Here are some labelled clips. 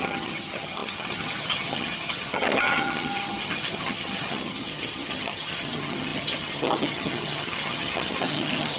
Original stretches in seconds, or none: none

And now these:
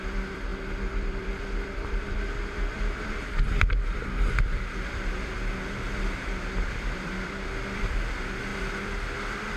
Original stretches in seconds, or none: none

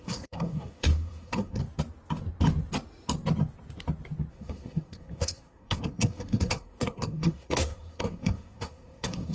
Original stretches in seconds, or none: 1.6-4.3

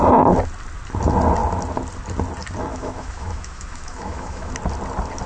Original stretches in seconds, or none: 0.0-2.7; 4.5-5.3

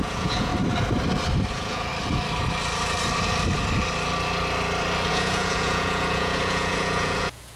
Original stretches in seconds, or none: 0.5-1.5; 1.9-5.1

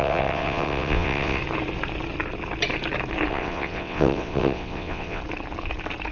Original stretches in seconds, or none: 1.4-3.3; 5.2-6.1

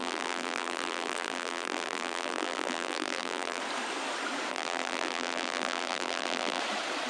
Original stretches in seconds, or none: 3.6-4.5; 6.6-7.1

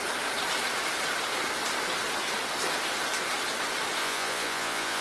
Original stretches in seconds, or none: 0.0-4.0